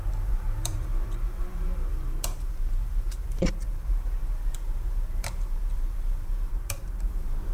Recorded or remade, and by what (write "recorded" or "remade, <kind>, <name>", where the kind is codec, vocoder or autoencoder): remade, vocoder, BigVGAN v2